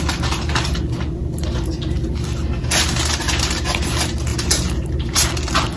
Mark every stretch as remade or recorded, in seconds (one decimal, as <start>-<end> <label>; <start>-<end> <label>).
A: 0.0-4.3 recorded; 4.3-5.3 remade; 5.3-5.8 recorded